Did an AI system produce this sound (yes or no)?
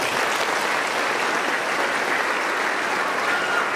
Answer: no